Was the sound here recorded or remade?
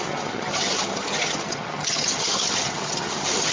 remade